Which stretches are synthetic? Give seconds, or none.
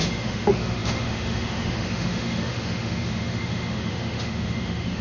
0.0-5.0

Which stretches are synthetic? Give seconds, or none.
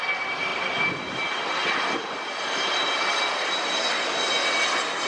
none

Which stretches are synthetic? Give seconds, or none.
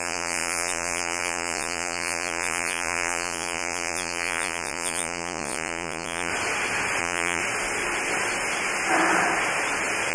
0.0-6.3; 7.0-7.4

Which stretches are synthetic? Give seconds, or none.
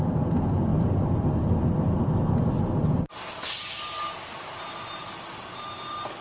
none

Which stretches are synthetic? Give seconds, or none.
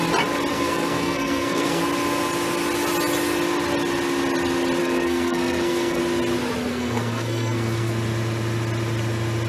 0.5-1.8; 4.8-6.0; 6.7-7.9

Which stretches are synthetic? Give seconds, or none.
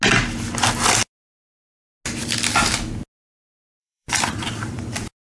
3.8-4.8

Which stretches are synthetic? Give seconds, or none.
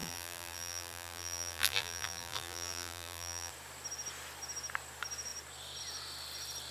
0.0-3.5